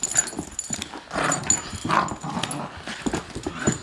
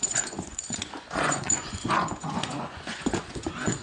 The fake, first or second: second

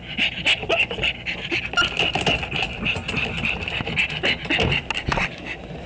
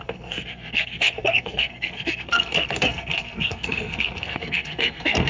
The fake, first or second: second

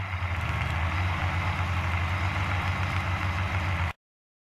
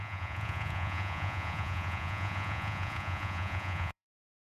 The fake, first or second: second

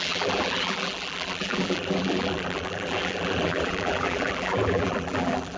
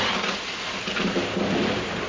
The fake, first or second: first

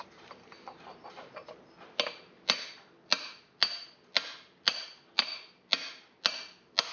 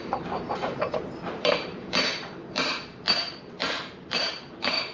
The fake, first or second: second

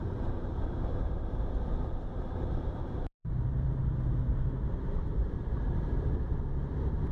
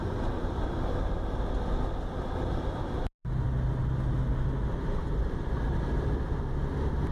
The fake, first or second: first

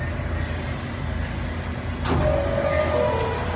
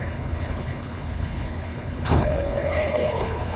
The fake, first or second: second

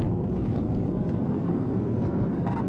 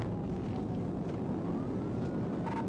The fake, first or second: first